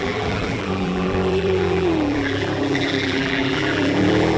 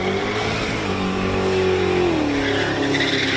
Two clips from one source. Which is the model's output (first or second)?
first